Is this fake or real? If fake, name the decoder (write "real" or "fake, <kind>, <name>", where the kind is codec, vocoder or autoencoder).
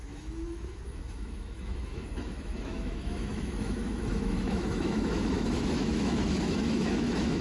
fake, autoencoder, DAC-VAE